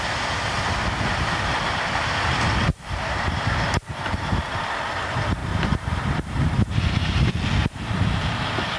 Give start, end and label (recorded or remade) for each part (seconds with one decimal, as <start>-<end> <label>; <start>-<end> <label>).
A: 0.0-2.7 recorded; 2.7-4.6 remade; 4.6-5.4 recorded; 5.4-7.3 remade; 7.3-8.8 recorded